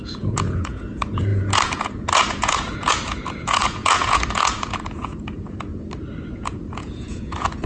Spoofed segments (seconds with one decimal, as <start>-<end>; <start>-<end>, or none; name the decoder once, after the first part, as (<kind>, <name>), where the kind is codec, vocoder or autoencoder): 0.0-5.7 (vocoder, Vocos); 6.3-7.7